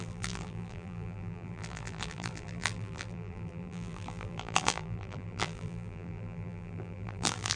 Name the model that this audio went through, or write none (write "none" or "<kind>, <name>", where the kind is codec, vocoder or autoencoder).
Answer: vocoder, BigVGAN v2